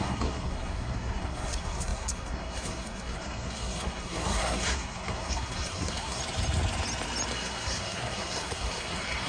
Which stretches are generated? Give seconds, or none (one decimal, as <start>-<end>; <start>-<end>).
0.0-6.2; 7.3-9.3